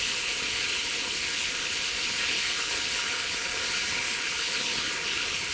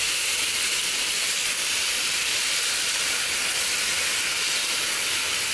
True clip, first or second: second